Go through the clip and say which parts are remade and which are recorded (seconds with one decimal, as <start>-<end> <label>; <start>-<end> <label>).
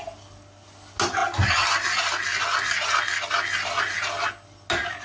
0.0-5.0 recorded